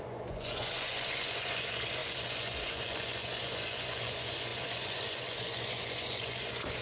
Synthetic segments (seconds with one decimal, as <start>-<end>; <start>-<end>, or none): 0.0-6.8